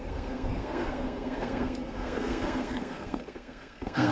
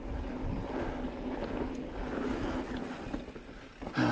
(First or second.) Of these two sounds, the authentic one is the second